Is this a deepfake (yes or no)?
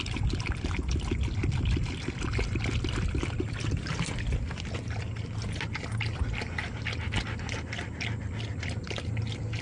no